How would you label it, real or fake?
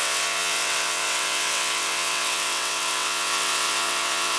fake